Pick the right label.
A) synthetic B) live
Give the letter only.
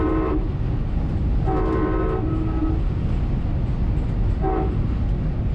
B